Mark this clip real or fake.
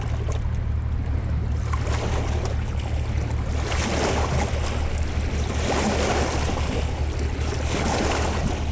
real